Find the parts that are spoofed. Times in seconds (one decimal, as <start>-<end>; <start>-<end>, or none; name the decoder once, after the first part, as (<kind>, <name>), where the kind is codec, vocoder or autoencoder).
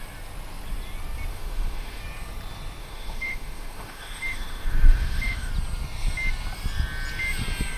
1.3-2.0 (autoencoder, DAC-VAE); 2.8-5.5